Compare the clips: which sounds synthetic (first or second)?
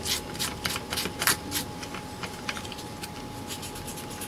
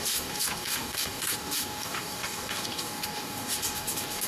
second